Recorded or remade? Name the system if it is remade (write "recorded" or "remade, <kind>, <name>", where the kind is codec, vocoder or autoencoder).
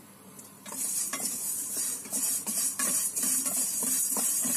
remade, vocoder, BigVGAN v2